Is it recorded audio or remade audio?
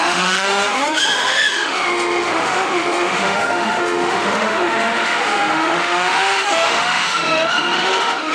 remade